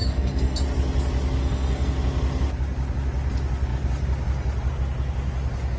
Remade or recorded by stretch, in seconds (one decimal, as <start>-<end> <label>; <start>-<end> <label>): 0.0-0.6 remade; 0.6-1.4 recorded; 1.4-1.9 remade; 1.9-5.8 recorded